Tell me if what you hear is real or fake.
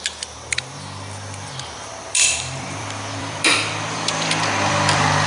fake